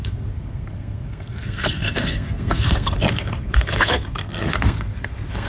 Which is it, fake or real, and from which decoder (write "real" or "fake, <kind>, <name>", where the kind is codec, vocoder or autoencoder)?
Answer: fake, codec, SNAC